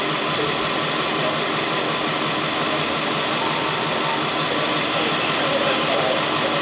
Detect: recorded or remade recorded